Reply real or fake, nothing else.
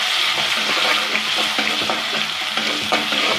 real